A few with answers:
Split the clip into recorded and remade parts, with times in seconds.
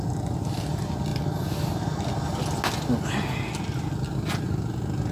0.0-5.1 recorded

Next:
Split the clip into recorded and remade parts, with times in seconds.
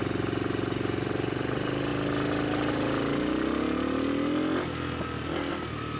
0.0-6.0 recorded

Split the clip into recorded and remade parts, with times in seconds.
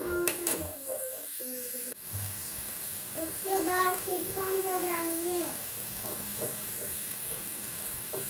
0.0-8.3 remade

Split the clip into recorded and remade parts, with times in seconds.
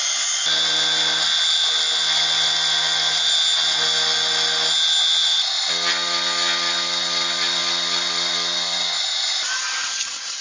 0.0-10.4 recorded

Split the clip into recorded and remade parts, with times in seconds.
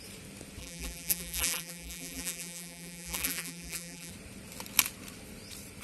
0.0-0.6 recorded; 0.6-4.1 remade; 4.1-5.8 recorded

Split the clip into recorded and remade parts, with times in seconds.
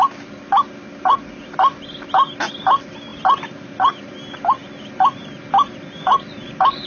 0.0-6.9 recorded